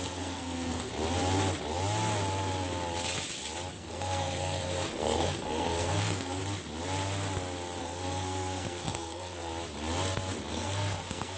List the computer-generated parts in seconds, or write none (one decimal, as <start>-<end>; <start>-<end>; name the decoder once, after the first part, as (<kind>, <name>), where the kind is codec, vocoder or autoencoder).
0.0-0.9 (codec, SNAC); 3.7-6.4; 7.8-9.5; 10.5-11.4